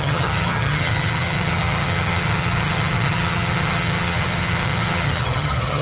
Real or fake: fake